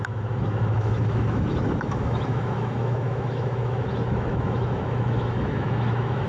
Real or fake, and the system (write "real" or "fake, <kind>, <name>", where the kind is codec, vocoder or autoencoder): fake, autoencoder, DAC-VAE